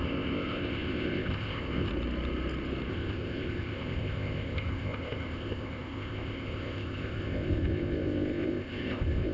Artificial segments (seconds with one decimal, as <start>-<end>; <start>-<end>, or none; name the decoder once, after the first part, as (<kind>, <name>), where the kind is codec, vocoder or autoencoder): 0.0-1.9 (codec, ZipCodec); 2.9-9.3